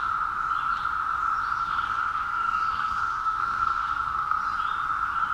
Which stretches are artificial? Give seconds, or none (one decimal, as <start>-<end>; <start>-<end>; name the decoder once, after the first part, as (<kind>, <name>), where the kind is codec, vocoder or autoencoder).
1.6-4.4 (codec, SNAC)